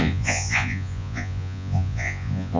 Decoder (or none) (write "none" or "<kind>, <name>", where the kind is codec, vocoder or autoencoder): vocoder, Vocos